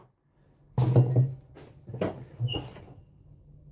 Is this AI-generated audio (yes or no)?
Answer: no